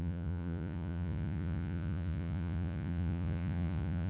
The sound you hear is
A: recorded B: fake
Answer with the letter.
B